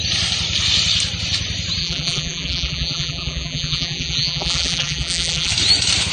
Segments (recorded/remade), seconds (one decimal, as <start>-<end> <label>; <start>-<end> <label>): 0.0-1.8 recorded; 1.8-5.5 remade; 5.5-6.1 recorded